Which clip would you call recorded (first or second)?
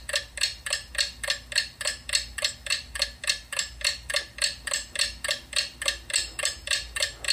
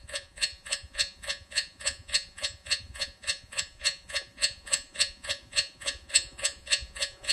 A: first